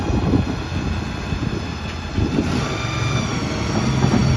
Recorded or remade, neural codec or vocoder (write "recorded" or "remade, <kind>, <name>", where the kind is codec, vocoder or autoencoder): recorded